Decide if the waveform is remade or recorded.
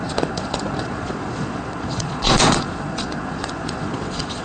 remade